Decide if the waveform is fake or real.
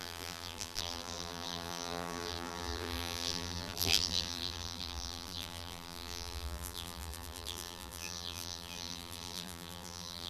fake